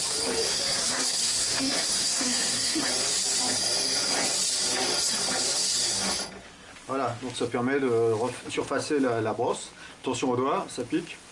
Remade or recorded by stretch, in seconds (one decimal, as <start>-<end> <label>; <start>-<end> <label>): 0.0-0.5 recorded; 0.5-2.9 remade; 2.9-11.3 recorded

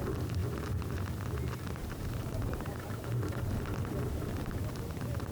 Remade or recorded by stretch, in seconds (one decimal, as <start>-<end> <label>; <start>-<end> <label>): 0.0-1.8 recorded; 1.8-3.2 remade; 3.2-5.3 recorded

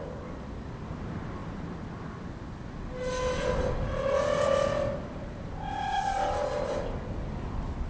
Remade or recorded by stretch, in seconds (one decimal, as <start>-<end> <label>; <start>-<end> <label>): 0.0-7.9 recorded

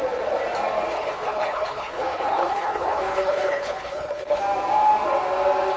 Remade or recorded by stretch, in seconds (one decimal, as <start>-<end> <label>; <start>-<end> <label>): 0.0-0.9 recorded; 0.9-4.4 remade; 4.4-5.8 recorded

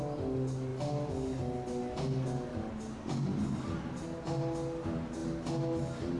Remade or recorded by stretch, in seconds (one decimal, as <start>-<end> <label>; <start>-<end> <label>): 0.0-6.2 recorded

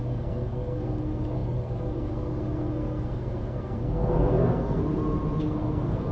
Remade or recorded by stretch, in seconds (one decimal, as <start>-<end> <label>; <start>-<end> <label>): 0.0-4.8 remade; 4.8-5.4 recorded; 5.4-6.1 remade

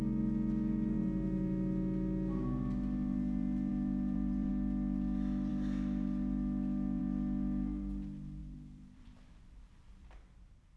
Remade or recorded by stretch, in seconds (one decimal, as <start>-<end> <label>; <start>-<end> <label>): 0.0-3.7 recorded; 3.7-4.5 remade; 4.5-8.4 recorded; 8.4-10.8 remade

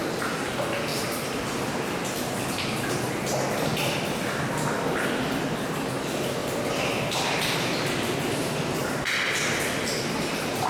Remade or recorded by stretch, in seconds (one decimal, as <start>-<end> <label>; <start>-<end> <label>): 0.0-0.9 recorded; 0.9-3.2 remade; 3.2-6.4 recorded; 6.4-7.5 remade; 7.5-8.8 recorded; 8.8-9.5 remade; 9.5-10.7 recorded